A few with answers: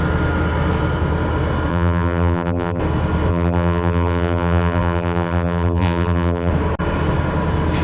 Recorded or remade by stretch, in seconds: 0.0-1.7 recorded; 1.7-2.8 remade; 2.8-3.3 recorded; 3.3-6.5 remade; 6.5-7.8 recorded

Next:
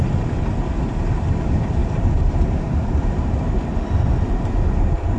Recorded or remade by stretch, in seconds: 0.0-1.8 recorded; 1.8-3.5 remade; 3.5-5.2 recorded

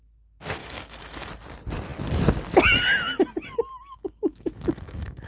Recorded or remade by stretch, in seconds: 0.0-0.6 recorded; 0.6-1.3 remade; 1.3-3.7 recorded; 3.7-5.3 remade

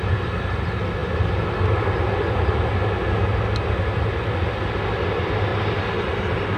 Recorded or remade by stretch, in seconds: 0.0-6.6 recorded

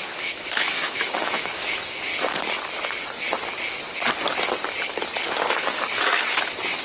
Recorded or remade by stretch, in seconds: 0.0-2.1 remade; 2.1-5.5 recorded; 5.5-6.8 remade

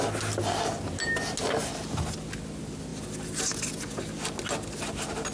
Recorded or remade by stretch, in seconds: 0.0-5.3 recorded